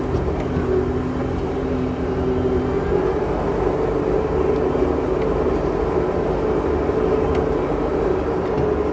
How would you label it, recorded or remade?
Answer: recorded